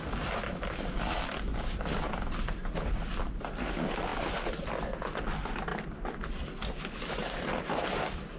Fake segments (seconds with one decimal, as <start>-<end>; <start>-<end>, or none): 5.7-6.3